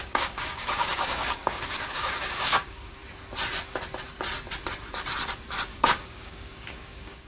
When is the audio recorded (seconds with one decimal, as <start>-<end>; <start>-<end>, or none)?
3.0-5.7